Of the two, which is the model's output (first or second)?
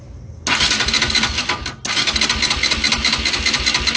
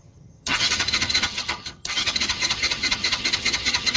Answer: second